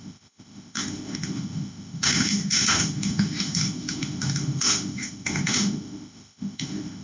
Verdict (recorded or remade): remade